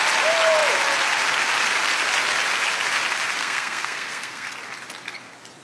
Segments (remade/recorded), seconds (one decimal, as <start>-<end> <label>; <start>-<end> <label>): 0.0-3.4 recorded; 3.4-4.5 remade; 4.5-5.6 recorded